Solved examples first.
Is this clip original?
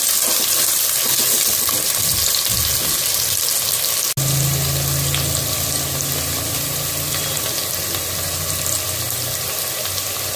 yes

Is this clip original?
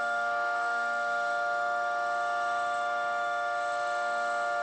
no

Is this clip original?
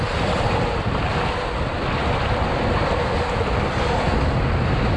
yes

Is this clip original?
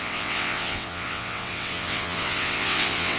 no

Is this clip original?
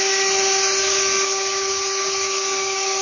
no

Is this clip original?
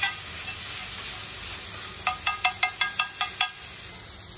yes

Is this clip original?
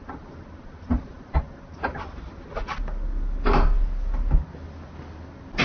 yes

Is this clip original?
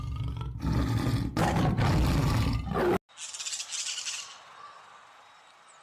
yes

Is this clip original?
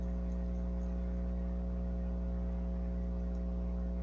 yes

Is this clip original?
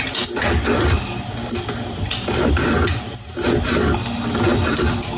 yes